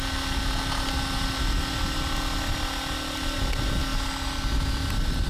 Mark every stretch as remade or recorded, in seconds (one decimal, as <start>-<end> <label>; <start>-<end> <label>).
0.0-5.3 recorded